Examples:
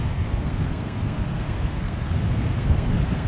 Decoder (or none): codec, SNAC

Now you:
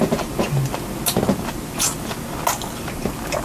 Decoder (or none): none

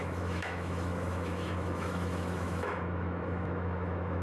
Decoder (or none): autoencoder, DAC-VAE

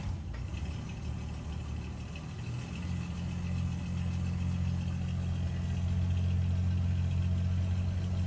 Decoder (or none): none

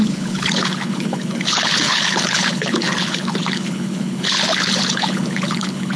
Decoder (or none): codec, HILCodec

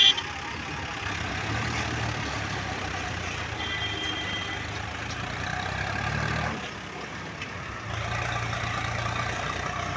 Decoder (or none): none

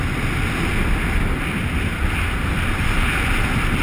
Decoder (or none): none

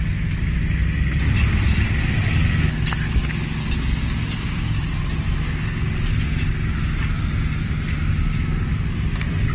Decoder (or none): none